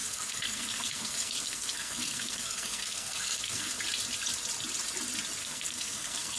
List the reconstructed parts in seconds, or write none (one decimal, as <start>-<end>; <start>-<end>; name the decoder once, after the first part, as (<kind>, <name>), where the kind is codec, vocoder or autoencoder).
0.0-3.8 (codec, SNAC); 5.4-6.4